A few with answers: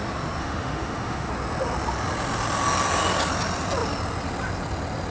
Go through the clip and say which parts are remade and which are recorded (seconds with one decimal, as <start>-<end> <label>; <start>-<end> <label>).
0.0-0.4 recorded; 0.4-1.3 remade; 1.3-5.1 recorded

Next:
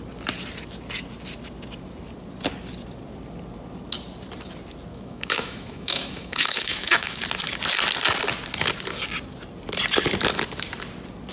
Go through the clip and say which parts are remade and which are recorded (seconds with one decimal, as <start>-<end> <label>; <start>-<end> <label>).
0.0-4.9 recorded; 4.9-7.2 remade; 7.2-11.3 recorded

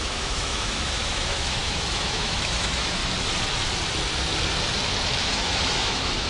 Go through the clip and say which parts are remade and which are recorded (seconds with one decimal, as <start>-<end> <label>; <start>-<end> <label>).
0.0-3.0 remade; 3.0-5.2 recorded; 5.2-6.3 remade

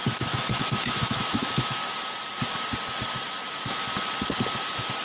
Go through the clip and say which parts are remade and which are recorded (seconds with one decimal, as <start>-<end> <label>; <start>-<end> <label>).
0.0-1.8 remade; 1.8-5.0 recorded